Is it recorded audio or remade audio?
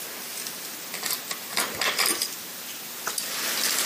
recorded